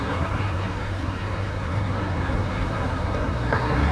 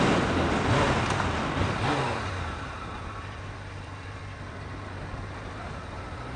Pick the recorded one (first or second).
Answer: second